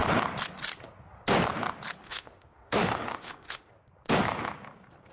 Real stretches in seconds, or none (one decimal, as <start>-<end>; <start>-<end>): 0.0-2.0; 3.7-5.1